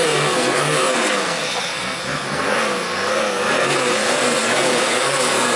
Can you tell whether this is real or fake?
fake